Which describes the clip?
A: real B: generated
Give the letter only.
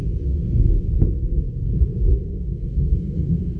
B